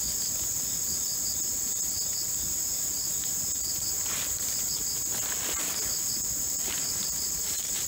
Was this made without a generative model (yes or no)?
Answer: yes